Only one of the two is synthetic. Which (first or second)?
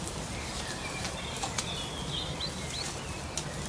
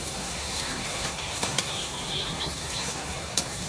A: second